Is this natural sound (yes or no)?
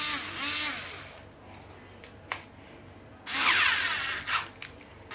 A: yes